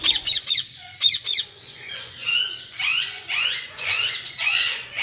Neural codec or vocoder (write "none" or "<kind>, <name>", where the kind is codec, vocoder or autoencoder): vocoder, Vocos